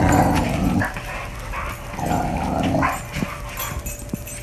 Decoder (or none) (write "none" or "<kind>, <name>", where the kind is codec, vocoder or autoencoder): none